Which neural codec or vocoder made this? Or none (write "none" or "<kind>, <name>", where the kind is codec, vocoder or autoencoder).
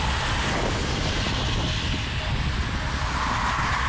none